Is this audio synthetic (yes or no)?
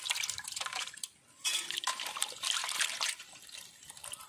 no